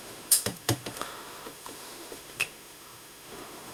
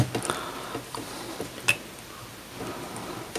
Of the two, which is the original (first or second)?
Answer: second